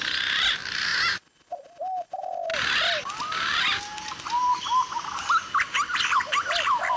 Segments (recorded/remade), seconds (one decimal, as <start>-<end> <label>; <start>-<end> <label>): 0.0-7.0 recorded